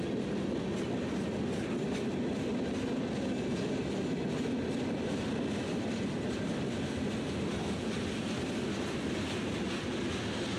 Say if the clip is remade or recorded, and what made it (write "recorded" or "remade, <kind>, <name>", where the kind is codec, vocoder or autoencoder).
recorded